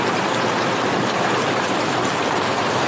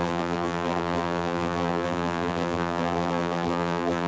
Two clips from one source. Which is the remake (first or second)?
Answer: second